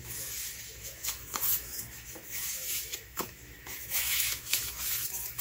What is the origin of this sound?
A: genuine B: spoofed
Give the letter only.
B